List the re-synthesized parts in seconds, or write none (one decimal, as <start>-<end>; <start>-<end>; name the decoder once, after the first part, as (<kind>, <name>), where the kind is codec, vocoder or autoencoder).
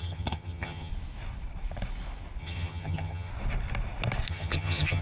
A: 0.0-0.9 (vocoder, HiFi-GAN); 2.4-3.3; 4.3-5.0